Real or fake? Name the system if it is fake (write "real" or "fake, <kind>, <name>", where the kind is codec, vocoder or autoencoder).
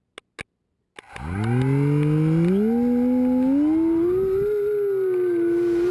real